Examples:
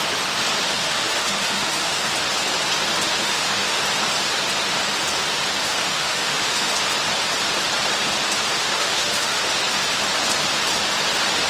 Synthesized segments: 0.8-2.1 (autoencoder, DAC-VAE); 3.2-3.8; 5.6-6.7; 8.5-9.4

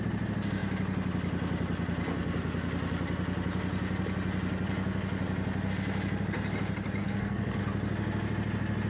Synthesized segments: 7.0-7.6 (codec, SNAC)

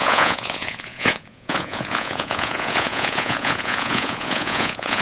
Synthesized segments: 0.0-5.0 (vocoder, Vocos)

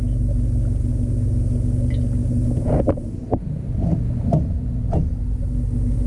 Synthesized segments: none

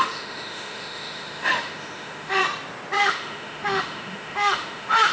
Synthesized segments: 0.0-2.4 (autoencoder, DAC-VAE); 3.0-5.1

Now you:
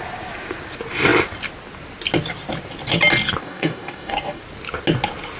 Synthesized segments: 3.4-4.4 (codec, DAC)